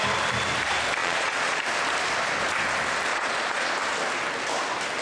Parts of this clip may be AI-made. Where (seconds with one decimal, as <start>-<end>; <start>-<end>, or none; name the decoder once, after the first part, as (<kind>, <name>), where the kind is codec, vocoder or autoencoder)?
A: 1.0-1.6 (vocoder, Vocos); 3.1-3.7